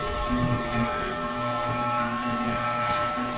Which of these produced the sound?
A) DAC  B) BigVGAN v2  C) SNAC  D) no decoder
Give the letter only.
C